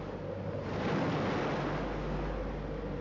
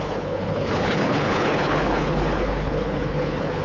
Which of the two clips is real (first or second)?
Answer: first